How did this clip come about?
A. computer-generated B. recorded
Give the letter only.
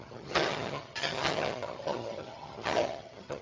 A